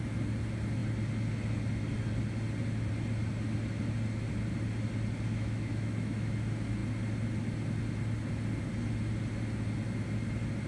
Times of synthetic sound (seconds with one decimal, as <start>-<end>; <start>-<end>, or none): 5.3-6.3